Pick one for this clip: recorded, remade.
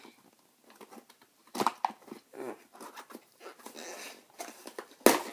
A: recorded